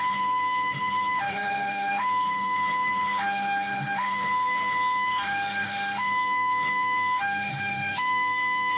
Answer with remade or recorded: remade